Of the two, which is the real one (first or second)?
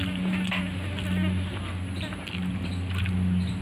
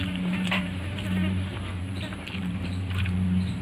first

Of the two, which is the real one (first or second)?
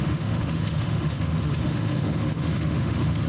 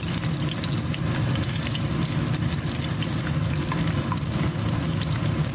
second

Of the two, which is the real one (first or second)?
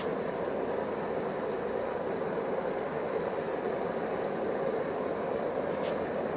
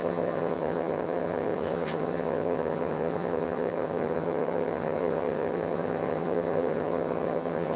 first